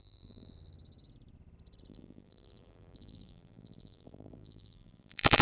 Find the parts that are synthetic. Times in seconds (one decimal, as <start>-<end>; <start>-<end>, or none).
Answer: 0.0-0.5; 1.9-5.4